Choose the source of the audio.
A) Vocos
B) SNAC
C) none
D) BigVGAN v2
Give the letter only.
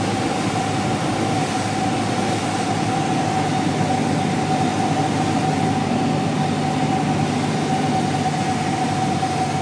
C